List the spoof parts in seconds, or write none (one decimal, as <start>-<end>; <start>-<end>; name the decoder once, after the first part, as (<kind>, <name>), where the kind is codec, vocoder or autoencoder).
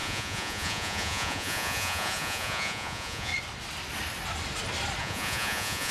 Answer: 0.0-3.3 (vocoder, Vocos); 5.0-5.9